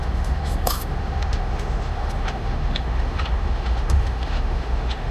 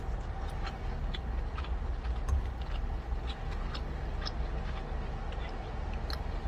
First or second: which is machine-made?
first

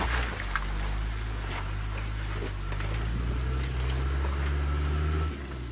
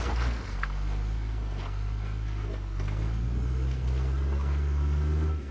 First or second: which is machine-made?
second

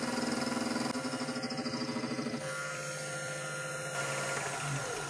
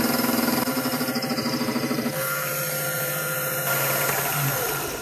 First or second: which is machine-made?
second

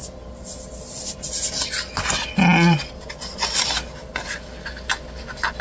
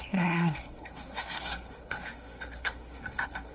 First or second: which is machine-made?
second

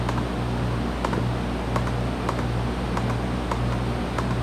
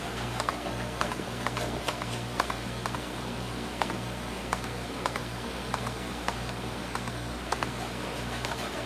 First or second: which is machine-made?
second